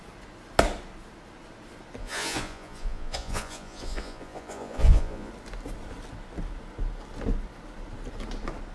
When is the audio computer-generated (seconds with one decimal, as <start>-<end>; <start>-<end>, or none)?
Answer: 2.0-5.3